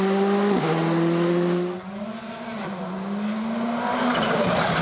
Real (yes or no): yes